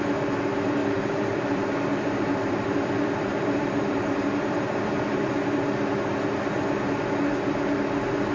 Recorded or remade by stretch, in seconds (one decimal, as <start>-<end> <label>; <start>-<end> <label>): 0.0-0.8 recorded; 0.8-5.6 remade; 5.6-8.3 recorded